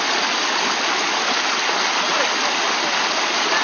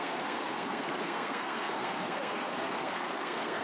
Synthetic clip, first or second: second